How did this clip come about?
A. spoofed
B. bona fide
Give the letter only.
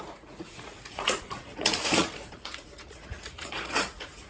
A